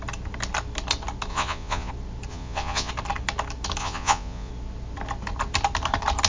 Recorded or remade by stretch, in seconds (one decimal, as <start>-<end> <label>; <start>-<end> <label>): 0.0-1.3 recorded; 1.3-1.9 remade; 1.9-2.3 recorded; 2.3-2.9 remade; 2.9-3.8 recorded; 3.8-4.5 remade; 4.5-6.3 recorded